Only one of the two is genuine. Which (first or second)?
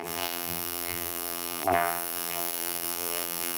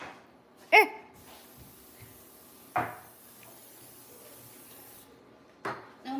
second